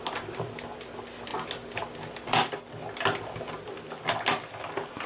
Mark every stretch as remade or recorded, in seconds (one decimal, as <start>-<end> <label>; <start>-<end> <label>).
0.0-5.1 recorded